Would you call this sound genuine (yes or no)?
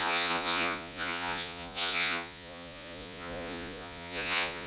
no